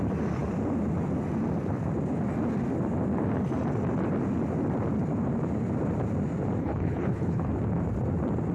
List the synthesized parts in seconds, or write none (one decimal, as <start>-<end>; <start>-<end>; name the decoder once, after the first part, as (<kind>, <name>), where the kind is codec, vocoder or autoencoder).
6.6-7.5 (codec, HILCodec)